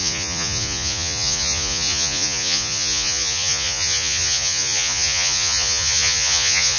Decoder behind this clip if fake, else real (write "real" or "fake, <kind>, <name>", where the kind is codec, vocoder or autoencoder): fake, vocoder, Vocos